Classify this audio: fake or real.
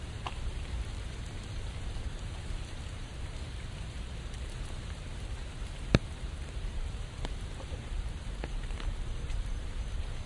fake